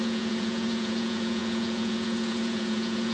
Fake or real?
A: fake